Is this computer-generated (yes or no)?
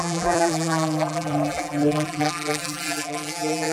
yes